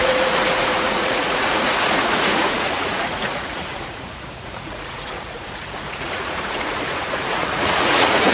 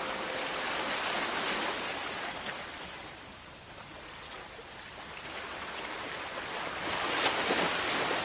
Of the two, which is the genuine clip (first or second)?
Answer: second